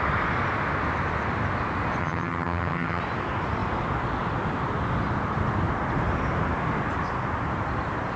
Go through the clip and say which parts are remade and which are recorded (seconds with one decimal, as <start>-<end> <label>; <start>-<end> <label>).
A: 0.0-2.0 recorded; 2.0-3.0 remade; 3.0-8.2 recorded